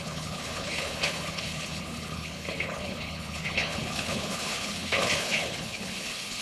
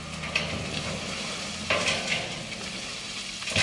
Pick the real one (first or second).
second